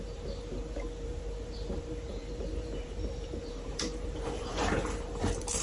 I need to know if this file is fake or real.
fake